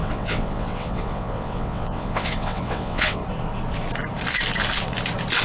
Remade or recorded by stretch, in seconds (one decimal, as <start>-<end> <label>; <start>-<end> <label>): 0.0-3.2 remade; 3.2-5.4 recorded